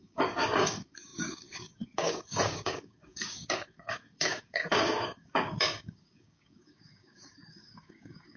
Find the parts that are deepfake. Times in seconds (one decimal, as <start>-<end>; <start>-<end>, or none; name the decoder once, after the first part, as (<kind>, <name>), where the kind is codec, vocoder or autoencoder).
0.0-8.4 (codec, DAC)